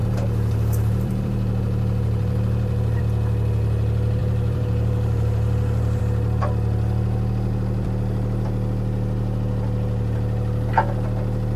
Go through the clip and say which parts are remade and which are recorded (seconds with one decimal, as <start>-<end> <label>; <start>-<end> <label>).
0.0-3.0 remade; 3.0-4.2 recorded; 4.2-6.0 remade; 6.0-11.6 recorded